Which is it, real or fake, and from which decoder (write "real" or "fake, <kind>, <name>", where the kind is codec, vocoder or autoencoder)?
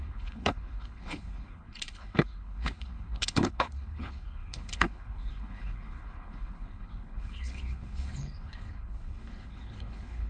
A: fake, codec, HILCodec